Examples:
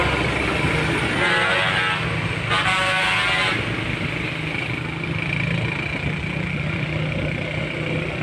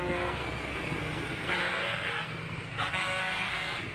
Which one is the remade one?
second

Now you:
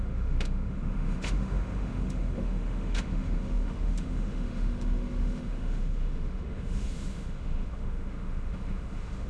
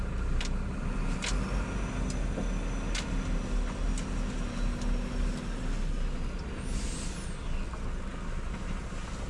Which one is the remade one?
first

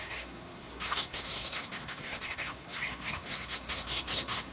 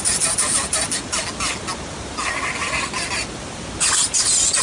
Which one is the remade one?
first